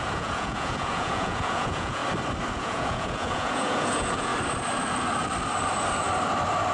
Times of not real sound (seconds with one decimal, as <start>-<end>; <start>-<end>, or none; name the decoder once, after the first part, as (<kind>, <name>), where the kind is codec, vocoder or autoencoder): 0.0-2.0 (vocoder, Vocos); 2.5-4.3